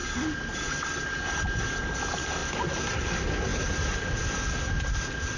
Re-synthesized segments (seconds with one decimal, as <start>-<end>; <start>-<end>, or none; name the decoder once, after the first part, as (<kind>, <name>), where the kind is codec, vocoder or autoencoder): none